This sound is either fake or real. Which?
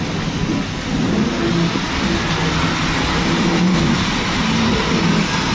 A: real